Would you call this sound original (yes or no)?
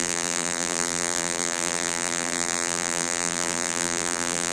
no